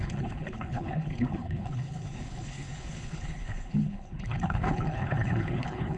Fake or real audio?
fake